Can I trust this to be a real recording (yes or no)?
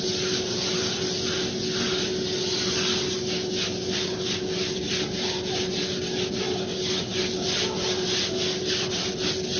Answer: yes